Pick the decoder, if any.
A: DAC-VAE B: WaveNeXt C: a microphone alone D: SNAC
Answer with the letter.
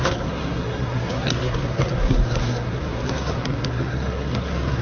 D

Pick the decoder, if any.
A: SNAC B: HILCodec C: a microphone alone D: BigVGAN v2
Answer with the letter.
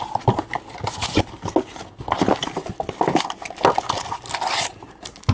C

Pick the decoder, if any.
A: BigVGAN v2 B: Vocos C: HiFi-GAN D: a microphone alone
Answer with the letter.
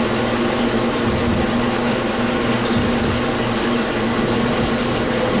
D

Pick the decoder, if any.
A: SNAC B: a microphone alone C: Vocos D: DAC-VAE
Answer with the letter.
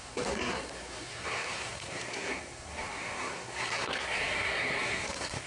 A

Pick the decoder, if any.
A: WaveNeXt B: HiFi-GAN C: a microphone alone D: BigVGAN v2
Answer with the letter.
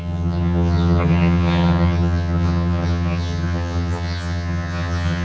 B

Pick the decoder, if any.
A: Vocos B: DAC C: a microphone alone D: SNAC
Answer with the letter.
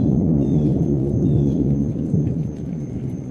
A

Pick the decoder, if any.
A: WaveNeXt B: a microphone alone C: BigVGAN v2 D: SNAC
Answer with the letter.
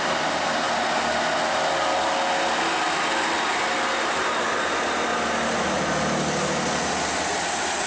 B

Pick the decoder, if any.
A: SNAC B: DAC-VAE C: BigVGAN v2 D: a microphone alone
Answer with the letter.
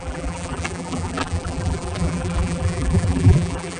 C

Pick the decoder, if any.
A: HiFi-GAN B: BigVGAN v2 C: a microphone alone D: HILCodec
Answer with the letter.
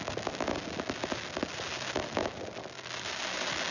C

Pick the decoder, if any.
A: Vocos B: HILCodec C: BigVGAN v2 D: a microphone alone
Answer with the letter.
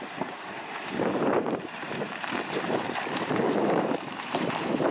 C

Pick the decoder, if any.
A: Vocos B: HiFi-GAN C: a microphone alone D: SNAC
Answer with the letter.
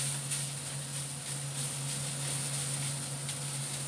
C